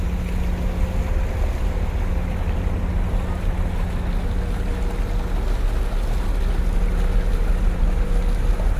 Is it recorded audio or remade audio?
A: recorded